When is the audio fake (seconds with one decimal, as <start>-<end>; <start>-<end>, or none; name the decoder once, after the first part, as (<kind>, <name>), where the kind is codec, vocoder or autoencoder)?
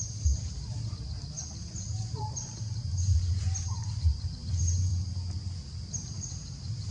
0.0-4.9 (vocoder, BigVGAN v2); 5.9-6.9